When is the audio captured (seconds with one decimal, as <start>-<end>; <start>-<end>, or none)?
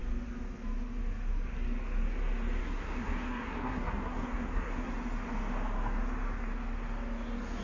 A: 0.0-2.6; 4.9-7.6